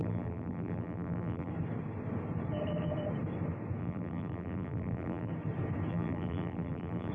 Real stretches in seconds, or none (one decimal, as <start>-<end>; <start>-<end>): 1.5-3.8; 5.3-5.9